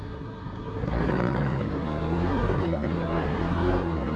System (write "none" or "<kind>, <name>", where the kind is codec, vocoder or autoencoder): codec, SNAC